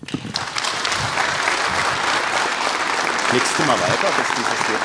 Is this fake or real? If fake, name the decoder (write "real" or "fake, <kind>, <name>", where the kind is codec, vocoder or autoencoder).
real